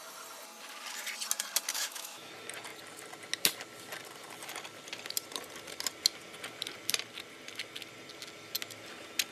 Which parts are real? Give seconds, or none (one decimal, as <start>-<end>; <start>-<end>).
0.0-1.7; 2.3-9.3